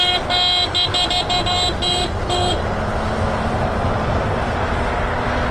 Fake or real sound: real